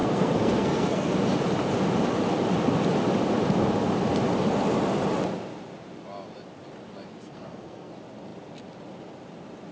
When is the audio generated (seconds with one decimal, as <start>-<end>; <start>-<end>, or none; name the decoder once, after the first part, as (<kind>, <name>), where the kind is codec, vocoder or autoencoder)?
0.0-1.1 (codec, SNAC); 7.1-7.9